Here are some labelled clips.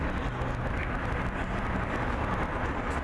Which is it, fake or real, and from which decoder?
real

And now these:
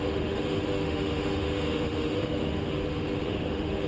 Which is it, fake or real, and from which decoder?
fake, autoencoder, DAC-VAE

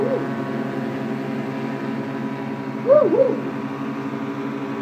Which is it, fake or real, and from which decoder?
real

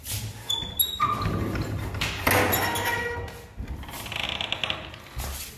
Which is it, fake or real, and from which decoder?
real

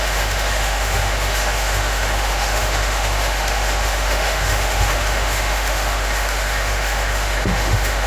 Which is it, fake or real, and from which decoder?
fake, autoencoder, DAC-VAE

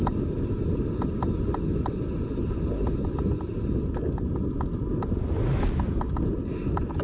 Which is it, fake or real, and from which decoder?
real